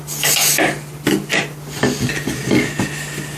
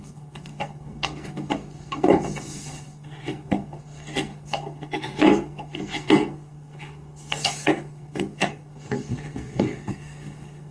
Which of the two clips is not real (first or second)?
second